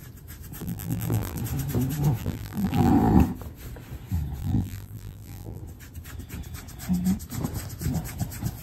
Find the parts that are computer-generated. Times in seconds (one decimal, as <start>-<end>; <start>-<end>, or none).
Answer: 0.6-1.4; 2.2-2.9; 4.4-5.6